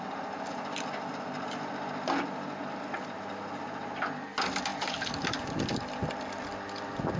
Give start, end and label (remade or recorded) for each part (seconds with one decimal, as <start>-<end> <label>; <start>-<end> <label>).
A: 0.0-7.2 recorded